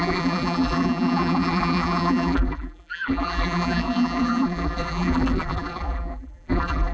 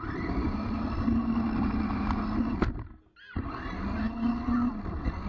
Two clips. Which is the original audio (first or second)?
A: second